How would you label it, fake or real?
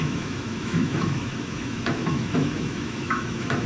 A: fake